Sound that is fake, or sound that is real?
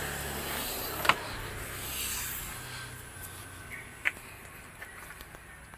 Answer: real